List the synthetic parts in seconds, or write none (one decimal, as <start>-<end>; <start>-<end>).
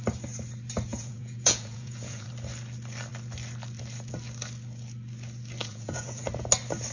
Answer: 0.9-2.3; 5.6-6.3